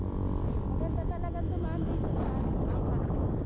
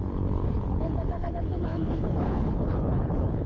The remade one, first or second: second